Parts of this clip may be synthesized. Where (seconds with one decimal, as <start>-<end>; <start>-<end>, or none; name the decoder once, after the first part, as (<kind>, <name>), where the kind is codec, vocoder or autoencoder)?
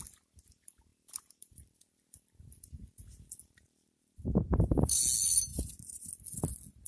0.9-5.0 (vocoder, BigVGAN v2); 5.5-6.1